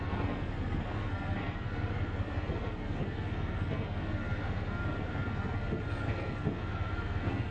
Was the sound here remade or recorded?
remade